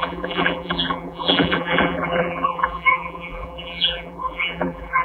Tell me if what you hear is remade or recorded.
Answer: remade